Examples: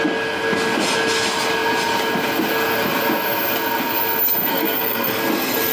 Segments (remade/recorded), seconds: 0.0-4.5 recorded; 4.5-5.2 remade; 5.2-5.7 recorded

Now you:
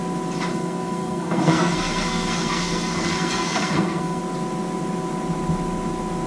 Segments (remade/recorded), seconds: 0.0-0.5 recorded; 0.5-4.2 remade; 4.2-6.3 recorded